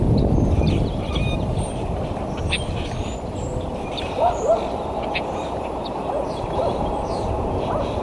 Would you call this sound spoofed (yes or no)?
yes